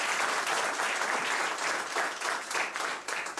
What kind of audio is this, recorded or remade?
recorded